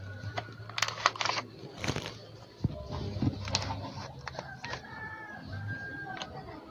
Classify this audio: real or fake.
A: real